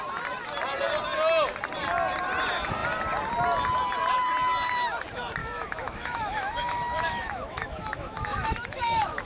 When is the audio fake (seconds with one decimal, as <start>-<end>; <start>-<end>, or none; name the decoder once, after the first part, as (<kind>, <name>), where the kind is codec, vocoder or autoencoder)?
5.4-9.3 (autoencoder, DAC-VAE)